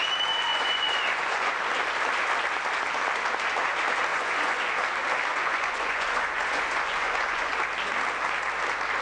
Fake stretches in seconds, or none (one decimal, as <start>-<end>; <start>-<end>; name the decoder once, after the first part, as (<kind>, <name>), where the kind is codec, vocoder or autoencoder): 0.5-1.6 (vocoder, Vocos); 4.1-4.7; 5.3-7.5